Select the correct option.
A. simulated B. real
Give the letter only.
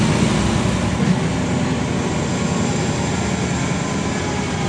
B